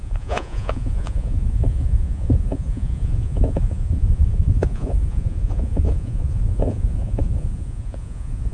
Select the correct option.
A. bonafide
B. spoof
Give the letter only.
B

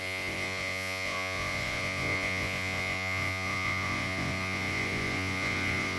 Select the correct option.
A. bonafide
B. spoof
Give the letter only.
B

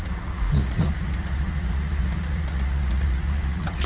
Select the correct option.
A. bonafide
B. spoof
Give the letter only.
B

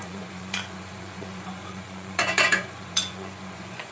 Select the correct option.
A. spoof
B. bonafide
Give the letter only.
A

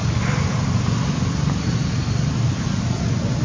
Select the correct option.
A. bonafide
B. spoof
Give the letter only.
A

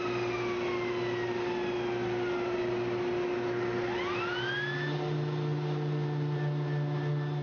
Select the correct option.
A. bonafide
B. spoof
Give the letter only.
A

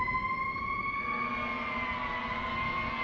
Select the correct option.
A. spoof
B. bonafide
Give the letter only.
B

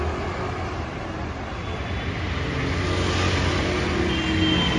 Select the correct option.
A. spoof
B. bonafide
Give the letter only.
B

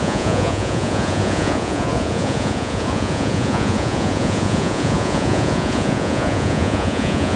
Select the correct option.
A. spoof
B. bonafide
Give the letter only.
A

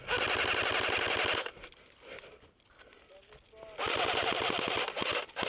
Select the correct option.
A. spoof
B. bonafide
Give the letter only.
B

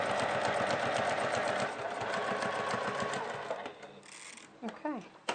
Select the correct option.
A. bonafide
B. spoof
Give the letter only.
A